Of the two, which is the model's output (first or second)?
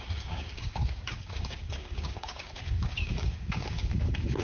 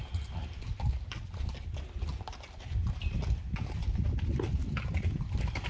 first